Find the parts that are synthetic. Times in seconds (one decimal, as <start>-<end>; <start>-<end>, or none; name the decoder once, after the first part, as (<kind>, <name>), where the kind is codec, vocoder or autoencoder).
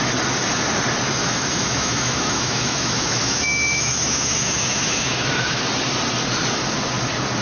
1.2-5.6 (autoencoder, DAC-VAE)